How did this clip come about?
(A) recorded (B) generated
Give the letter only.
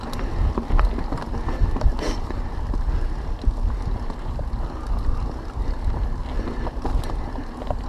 A